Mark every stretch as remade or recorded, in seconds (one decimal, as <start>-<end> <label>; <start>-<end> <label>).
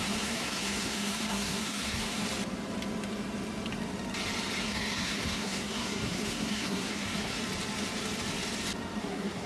0.0-2.2 remade; 2.2-4.6 recorded; 4.6-7.4 remade; 7.4-9.0 recorded; 9.0-9.5 remade